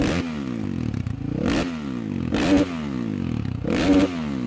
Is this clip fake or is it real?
real